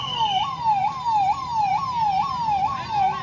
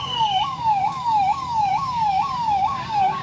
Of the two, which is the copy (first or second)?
second